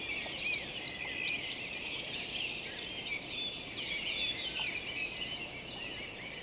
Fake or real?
fake